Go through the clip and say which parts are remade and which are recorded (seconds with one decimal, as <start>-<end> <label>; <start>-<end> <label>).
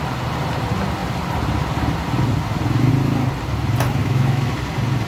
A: 0.0-4.0 recorded; 4.0-4.5 remade; 4.5-5.1 recorded